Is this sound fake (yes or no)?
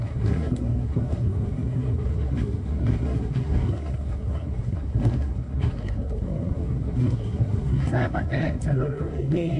yes